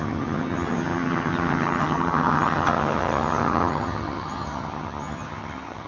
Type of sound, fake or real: fake